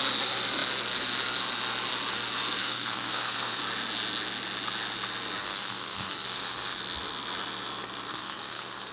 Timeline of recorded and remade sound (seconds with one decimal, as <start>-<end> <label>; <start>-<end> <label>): 0.0-2.6 recorded; 2.6-3.6 remade; 3.6-5.4 recorded; 5.4-6.8 remade; 6.8-8.1 recorded; 8.1-8.9 remade